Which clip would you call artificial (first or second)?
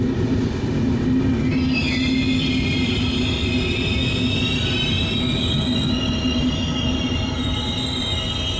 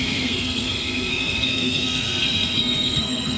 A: second